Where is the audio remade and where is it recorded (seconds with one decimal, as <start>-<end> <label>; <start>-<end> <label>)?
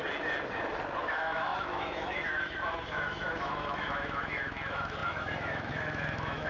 0.0-1.0 recorded; 1.0-6.5 remade